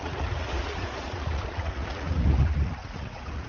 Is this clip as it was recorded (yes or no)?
no